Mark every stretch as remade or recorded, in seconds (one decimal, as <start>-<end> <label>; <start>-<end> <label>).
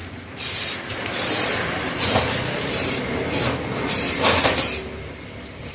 0.0-3.4 remade; 3.4-5.7 recorded